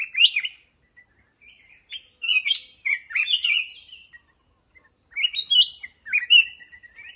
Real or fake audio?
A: real